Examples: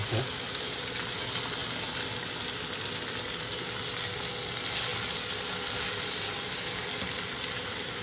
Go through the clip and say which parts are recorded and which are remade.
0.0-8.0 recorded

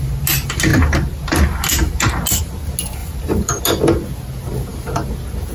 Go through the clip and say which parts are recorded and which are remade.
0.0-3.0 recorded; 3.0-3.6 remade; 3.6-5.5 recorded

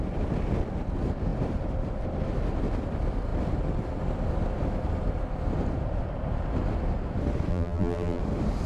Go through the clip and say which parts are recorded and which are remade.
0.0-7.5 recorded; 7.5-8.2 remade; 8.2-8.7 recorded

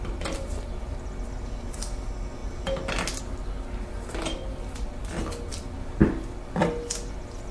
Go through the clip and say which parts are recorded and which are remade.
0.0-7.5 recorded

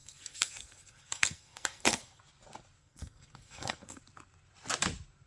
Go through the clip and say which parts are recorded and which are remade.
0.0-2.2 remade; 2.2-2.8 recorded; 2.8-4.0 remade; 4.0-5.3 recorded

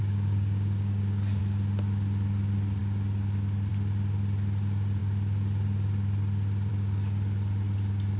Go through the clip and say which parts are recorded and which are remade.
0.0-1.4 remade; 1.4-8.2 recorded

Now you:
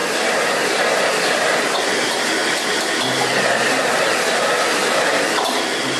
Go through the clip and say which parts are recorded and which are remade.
0.0-1.6 remade; 1.6-2.4 recorded; 2.4-6.0 remade